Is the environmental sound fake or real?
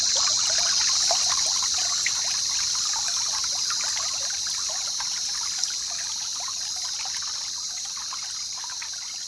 real